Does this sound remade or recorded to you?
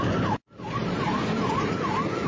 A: remade